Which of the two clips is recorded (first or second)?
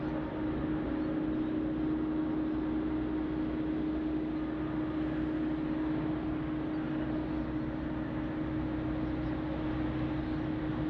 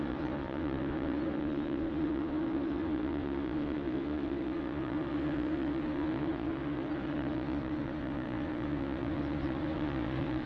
first